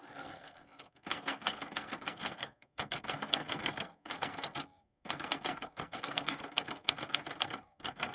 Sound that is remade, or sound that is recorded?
remade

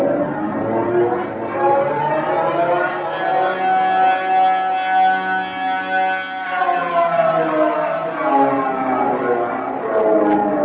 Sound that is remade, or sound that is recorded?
recorded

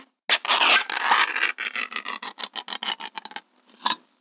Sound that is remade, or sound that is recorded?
recorded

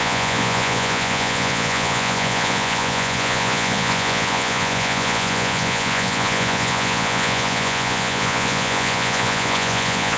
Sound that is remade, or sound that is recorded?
remade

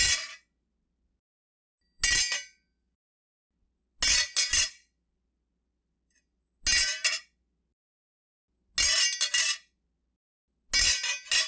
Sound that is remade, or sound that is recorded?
recorded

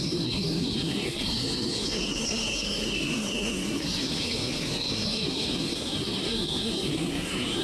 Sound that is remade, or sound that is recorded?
remade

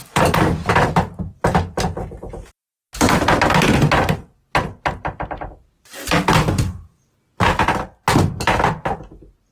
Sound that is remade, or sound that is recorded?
recorded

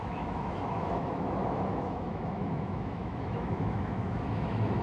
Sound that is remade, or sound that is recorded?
remade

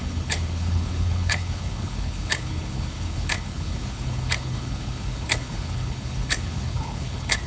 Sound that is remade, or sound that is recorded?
remade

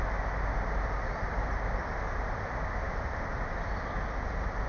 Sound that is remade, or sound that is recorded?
remade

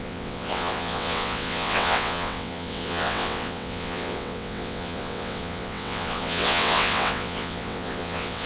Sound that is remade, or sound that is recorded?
remade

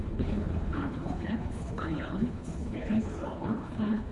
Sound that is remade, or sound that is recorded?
remade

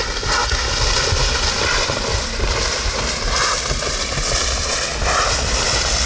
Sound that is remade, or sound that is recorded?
recorded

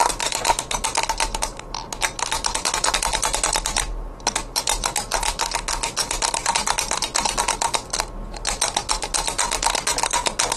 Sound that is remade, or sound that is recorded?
recorded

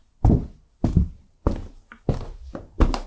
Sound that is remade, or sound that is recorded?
recorded